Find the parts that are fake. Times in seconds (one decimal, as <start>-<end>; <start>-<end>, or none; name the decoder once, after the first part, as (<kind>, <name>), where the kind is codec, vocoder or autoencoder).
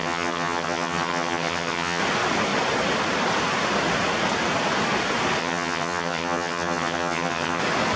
0.0-2.0 (vocoder, HiFi-GAN); 5.4-7.6